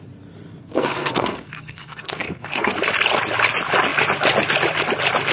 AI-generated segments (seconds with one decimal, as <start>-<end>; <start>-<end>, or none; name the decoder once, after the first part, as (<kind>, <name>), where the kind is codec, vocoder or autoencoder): 0.6-2.7 (codec, SNAC)